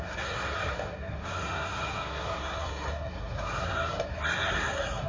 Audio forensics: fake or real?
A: fake